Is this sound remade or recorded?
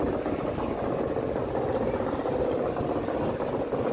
recorded